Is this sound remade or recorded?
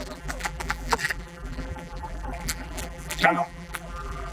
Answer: remade